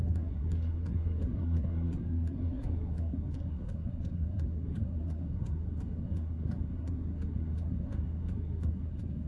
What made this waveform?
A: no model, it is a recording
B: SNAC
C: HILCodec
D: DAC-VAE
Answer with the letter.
B